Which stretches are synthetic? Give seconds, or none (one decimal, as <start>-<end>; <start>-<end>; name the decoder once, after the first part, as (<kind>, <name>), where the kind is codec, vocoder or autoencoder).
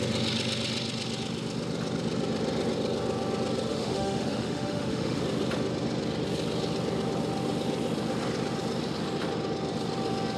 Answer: 3.7-5.2 (autoencoder, DAC-VAE)